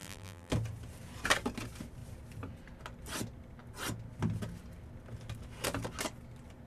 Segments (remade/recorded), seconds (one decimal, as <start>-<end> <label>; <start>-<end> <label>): 0.0-0.5 remade; 0.5-6.7 recorded